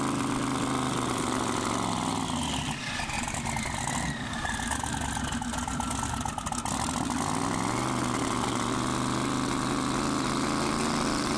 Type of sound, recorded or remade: recorded